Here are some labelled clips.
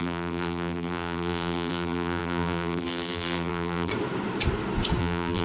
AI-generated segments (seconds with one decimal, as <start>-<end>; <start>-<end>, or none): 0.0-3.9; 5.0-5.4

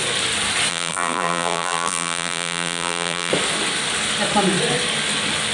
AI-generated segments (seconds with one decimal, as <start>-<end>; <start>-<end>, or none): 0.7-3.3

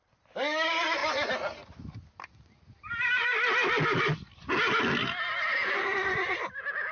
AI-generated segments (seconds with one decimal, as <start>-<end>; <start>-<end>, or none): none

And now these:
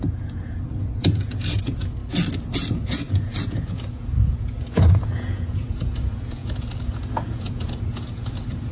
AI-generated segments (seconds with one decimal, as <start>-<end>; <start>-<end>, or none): 0.0-2.0; 2.7-8.7